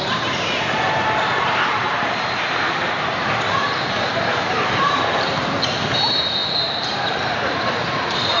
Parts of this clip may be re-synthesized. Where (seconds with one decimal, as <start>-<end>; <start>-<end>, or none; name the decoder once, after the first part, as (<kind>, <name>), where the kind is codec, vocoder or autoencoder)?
0.0-8.4 (vocoder, BigVGAN v2)